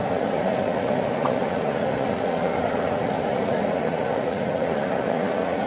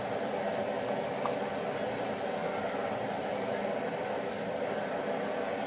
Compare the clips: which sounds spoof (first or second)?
first